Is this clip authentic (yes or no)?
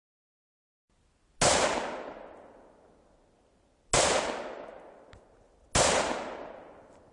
yes